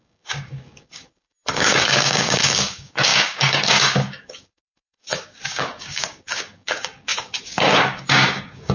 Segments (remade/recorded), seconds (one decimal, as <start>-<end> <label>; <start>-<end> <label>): 0.0-8.7 remade